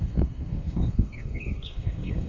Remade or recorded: remade